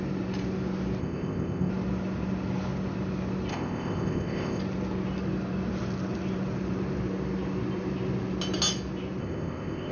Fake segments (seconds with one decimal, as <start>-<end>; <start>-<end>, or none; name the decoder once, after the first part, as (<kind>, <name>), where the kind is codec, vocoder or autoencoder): 1.0-1.7 (codec, ZipCodec); 3.5-4.6; 9.2-9.9